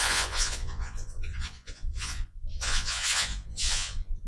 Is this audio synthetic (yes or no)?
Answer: yes